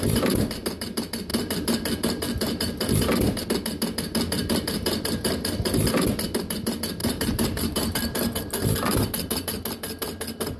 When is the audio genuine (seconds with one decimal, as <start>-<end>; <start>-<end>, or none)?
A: 0.0-7.0; 8.4-10.6